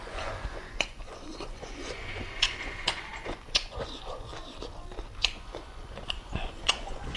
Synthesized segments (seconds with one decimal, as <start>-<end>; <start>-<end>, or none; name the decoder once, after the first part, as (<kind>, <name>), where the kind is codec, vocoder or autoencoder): 0.0-4.3 (vocoder, Vocos); 5.2-7.2